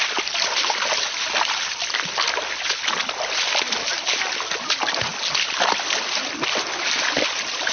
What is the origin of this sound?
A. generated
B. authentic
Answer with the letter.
B